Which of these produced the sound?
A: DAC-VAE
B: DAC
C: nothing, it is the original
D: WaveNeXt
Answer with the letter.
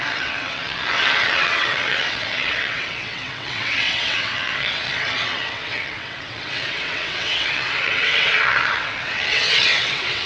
D